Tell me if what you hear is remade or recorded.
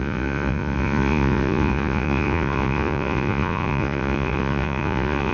remade